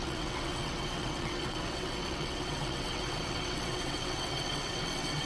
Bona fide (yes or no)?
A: no